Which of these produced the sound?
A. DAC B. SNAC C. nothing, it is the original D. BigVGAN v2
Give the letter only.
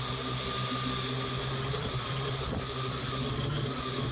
C